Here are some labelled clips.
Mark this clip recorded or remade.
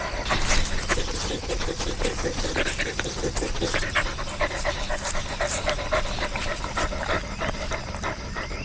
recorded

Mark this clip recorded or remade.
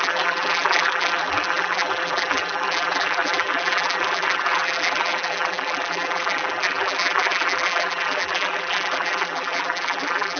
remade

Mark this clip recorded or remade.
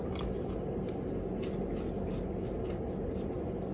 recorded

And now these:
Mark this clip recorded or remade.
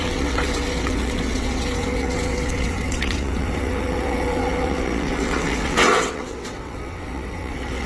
remade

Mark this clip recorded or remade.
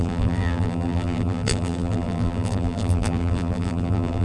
remade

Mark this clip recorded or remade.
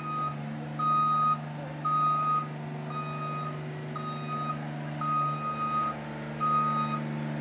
recorded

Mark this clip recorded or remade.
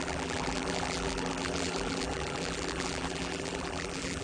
remade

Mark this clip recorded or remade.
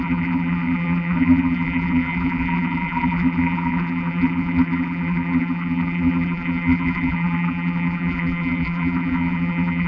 remade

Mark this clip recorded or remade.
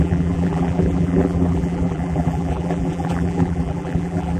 remade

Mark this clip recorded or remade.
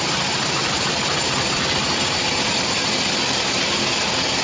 recorded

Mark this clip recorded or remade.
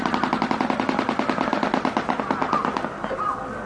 recorded